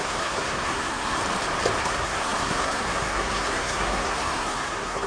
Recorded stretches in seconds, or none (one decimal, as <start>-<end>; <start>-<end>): 1.2-1.8